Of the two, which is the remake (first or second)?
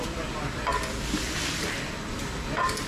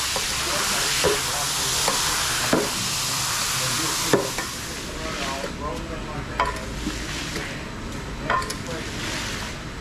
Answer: first